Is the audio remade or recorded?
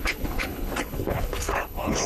remade